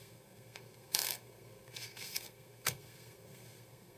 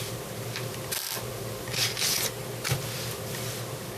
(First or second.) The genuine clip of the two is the second